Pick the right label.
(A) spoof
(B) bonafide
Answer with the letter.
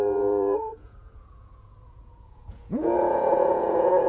A